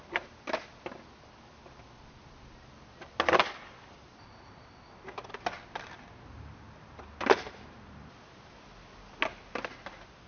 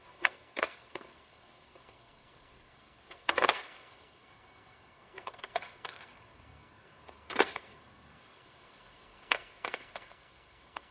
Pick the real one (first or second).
first